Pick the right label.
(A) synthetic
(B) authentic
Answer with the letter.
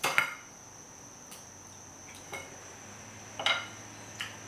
B